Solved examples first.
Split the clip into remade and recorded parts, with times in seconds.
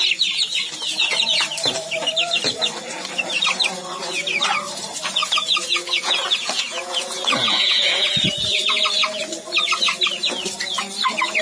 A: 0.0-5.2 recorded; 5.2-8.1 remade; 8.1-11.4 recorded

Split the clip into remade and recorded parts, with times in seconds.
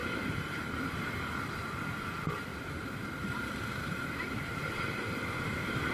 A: 0.0-1.8 remade; 1.8-2.5 recorded; 2.5-5.9 remade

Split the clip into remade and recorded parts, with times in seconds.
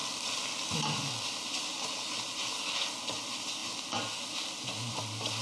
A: 0.0-5.4 recorded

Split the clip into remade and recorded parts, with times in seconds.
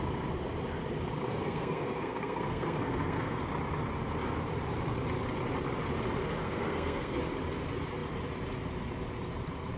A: 0.0-1.3 recorded; 1.3-3.4 remade; 3.4-6.4 recorded; 6.4-7.2 remade; 7.2-9.8 recorded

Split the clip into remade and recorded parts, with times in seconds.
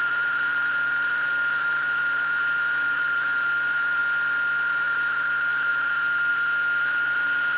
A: 0.0-4.0 remade; 4.0-4.7 recorded; 4.7-7.6 remade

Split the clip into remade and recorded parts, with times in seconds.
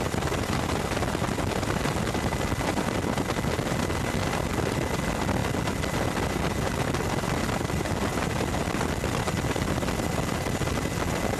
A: 0.0-11.4 recorded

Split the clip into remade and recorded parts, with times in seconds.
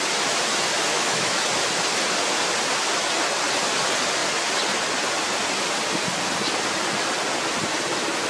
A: 0.0-0.9 recorded; 0.9-1.4 remade; 1.4-8.3 recorded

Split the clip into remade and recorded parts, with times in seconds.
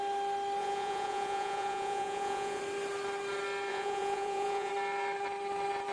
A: 0.0-0.6 recorded; 0.6-2.6 remade; 2.6-3.7 recorded; 3.7-4.7 remade; 4.7-5.9 recorded